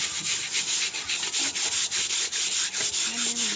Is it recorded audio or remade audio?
recorded